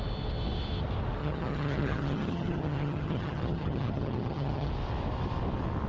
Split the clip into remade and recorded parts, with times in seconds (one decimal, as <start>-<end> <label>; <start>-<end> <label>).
0.0-1.2 recorded; 1.2-4.7 remade; 4.7-5.9 recorded